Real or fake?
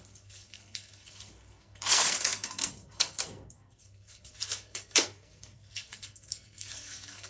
fake